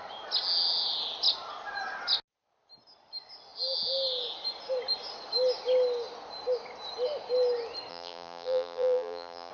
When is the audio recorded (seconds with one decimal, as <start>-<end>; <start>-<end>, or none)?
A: 0.0-7.9